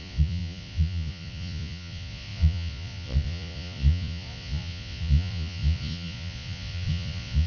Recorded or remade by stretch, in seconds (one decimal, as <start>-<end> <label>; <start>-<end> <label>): 0.0-7.5 remade